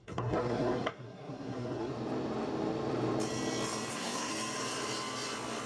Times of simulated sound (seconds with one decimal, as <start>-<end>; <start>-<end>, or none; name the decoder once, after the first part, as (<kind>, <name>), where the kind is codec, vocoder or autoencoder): 0.0-1.9 (codec, SNAC); 3.9-4.3